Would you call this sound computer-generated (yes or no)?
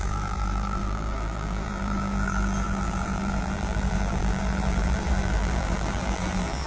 yes